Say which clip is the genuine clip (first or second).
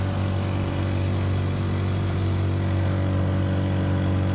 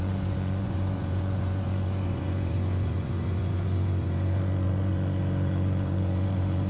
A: first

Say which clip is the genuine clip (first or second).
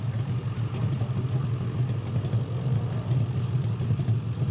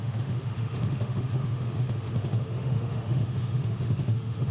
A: first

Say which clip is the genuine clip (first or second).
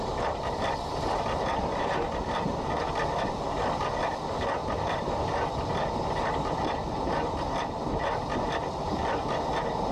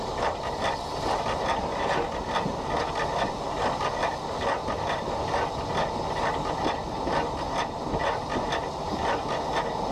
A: second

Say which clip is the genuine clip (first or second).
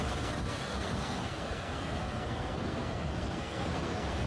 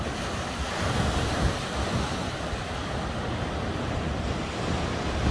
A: second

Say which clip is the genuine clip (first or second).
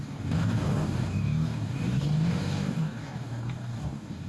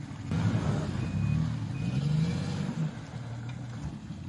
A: second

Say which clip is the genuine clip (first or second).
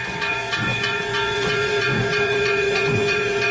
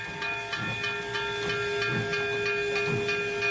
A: second